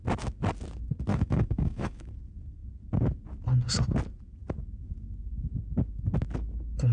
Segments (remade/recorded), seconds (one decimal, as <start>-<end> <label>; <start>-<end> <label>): 0.0-1.1 recorded; 1.1-2.1 remade; 2.1-6.9 recorded